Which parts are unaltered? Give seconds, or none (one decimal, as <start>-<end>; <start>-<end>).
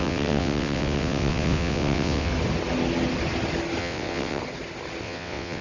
2.3-3.8; 4.4-5.0